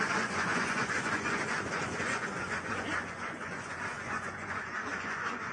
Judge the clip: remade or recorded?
remade